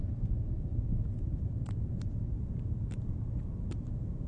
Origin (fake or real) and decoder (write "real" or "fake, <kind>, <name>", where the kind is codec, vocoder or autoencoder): fake, vocoder, BigVGAN v2